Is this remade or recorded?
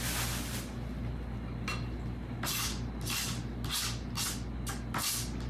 recorded